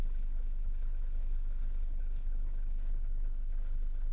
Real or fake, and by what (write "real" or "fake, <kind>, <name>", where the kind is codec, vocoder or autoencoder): fake, codec, HILCodec